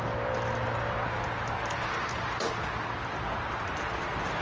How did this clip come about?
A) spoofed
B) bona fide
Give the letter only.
B